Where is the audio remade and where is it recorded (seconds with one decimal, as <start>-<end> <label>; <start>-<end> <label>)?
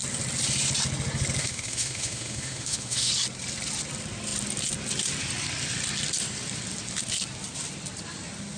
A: 0.0-1.4 recorded; 1.4-3.1 remade; 3.1-8.6 recorded